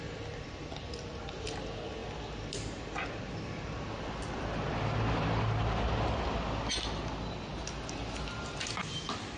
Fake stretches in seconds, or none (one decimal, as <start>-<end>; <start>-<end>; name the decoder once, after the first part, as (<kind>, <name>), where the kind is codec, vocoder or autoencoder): none